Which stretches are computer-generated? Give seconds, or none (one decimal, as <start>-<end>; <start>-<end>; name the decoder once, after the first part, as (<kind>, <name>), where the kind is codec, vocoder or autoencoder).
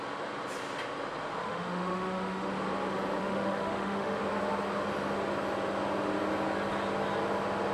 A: 1.4-2.5 (autoencoder, DAC-VAE); 3.2-4.2